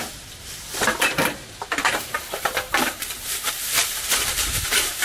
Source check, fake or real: fake